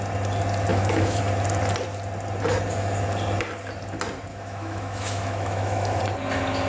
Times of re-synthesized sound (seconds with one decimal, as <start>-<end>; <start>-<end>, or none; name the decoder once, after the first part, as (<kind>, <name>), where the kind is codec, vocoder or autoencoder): 0.7-1.2 (autoencoder, DAC-VAE); 4.3-6.0